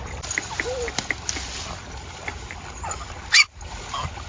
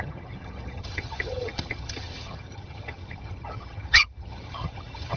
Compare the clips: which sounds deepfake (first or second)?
second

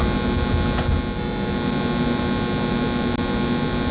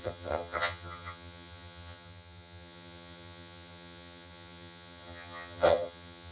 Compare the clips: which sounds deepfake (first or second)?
second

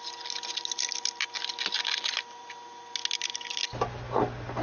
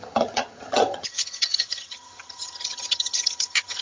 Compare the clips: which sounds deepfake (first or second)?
second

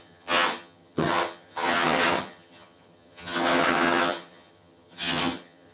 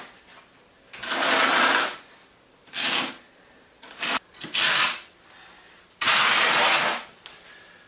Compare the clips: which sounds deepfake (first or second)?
first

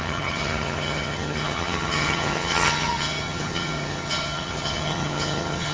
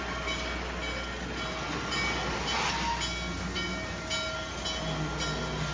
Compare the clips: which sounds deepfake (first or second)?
first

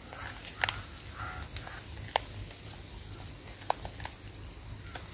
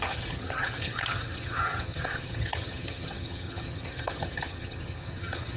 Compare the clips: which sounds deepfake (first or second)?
second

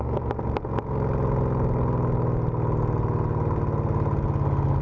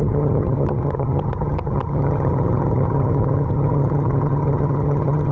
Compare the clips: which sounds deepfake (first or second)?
second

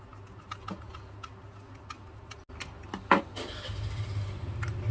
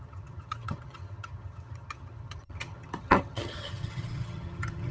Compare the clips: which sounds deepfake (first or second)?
second